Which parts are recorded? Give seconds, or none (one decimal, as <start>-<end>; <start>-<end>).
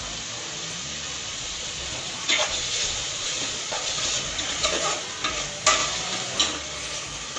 0.0-1.3; 5.0-7.4